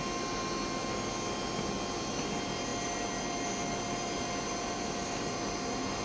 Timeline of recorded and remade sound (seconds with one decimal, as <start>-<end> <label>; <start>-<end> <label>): 0.0-6.0 recorded